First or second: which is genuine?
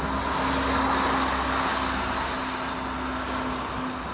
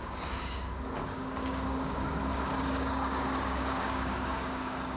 first